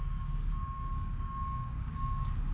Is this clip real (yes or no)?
no